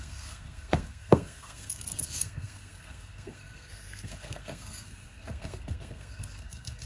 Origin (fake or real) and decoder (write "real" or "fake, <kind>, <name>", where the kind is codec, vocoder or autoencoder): fake, codec, SNAC